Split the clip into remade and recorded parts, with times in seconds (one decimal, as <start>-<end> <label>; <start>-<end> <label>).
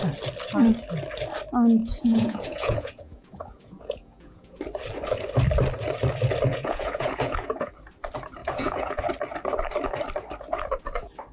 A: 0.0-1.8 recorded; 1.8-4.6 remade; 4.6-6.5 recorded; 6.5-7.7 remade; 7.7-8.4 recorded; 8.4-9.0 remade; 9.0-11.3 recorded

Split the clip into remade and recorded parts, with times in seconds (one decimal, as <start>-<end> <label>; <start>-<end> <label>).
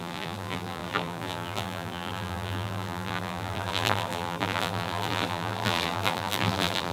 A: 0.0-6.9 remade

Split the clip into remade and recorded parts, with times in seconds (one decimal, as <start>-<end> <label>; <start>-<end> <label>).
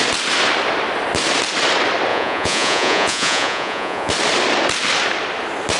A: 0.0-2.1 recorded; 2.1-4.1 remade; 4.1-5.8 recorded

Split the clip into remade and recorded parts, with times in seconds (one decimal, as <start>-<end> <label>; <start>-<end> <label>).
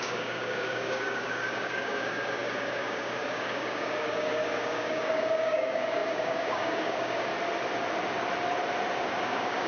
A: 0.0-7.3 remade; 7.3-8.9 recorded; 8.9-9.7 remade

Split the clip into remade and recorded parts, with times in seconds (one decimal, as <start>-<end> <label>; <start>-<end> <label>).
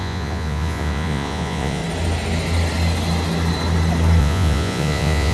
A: 0.0-1.8 remade; 1.8-4.2 recorded; 4.2-5.3 remade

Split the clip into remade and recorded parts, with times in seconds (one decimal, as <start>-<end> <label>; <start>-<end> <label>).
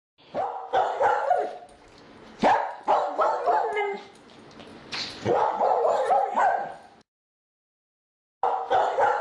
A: 0.0-4.7 recorded; 4.7-6.1 remade; 6.1-9.2 recorded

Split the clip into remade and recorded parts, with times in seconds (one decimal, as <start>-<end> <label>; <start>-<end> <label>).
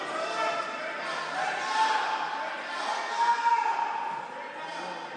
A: 0.0-5.2 recorded